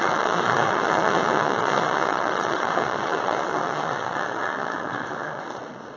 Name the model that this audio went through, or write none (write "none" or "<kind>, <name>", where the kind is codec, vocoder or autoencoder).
vocoder, Vocos